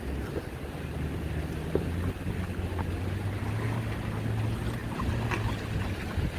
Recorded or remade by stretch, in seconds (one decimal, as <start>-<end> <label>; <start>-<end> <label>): 0.0-6.4 recorded